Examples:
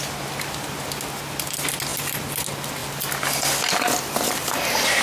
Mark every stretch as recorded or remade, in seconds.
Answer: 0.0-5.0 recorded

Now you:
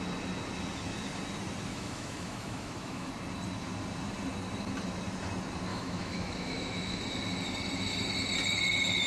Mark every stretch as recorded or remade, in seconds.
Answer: 0.0-1.7 recorded; 1.7-3.1 remade; 3.1-5.7 recorded; 5.7-7.0 remade; 7.0-9.1 recorded